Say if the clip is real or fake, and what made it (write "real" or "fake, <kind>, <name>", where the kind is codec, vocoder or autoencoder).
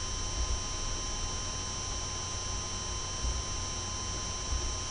real